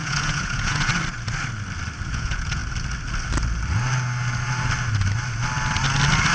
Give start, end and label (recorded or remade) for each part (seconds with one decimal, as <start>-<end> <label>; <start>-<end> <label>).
0.0-0.9 remade; 0.9-2.1 recorded; 2.1-2.6 remade; 2.6-6.3 recorded